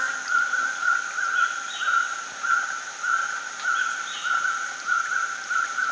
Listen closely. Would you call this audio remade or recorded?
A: recorded